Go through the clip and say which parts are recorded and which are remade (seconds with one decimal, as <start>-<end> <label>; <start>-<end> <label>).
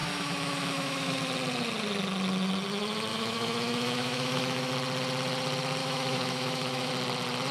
0.0-1.2 remade; 1.2-3.1 recorded; 3.1-4.7 remade; 4.7-5.8 recorded; 5.8-6.9 remade; 6.9-7.5 recorded